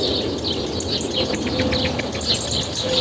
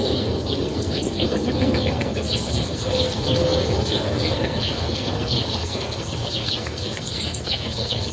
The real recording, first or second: first